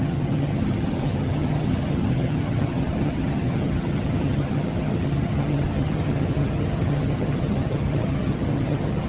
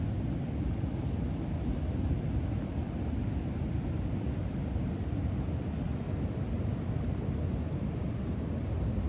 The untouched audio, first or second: second